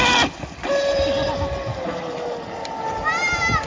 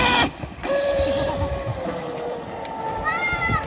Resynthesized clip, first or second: second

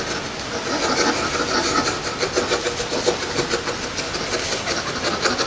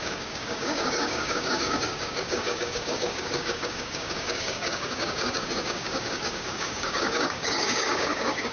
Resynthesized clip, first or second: second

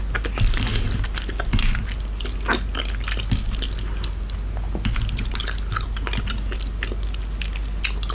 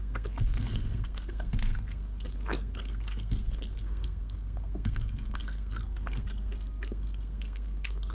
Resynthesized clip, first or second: second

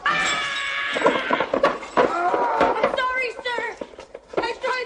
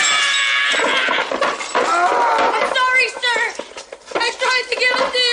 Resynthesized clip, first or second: first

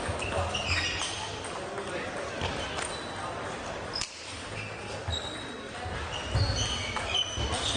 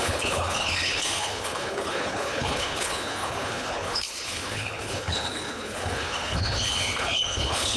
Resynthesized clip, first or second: second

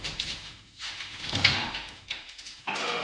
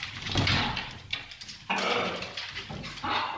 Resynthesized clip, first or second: first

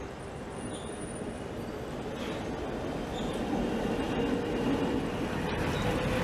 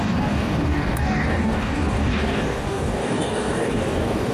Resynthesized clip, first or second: second